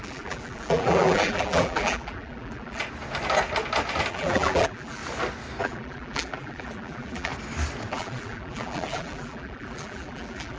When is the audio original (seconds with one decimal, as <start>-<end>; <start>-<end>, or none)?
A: 2.8-4.1; 5.0-5.6; 7.3-7.9